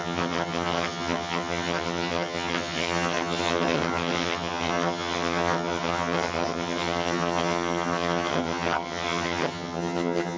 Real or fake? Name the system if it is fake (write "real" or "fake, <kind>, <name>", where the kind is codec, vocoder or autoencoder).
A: fake, vocoder, HiFi-GAN